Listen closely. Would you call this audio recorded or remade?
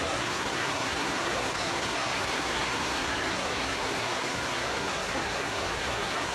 remade